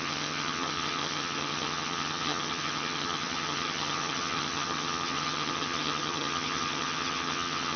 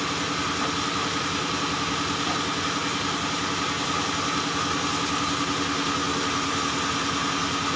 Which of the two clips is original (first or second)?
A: second